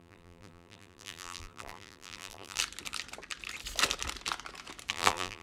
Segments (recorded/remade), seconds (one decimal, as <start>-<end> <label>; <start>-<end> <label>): 0.0-2.6 remade; 2.6-4.9 recorded; 4.9-5.4 remade